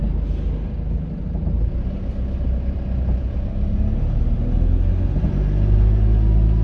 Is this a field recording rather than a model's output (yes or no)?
yes